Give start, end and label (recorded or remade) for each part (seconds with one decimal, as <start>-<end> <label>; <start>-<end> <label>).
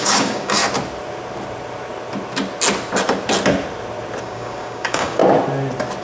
0.0-0.6 remade; 0.6-4.2 recorded; 4.2-5.2 remade; 5.2-6.0 recorded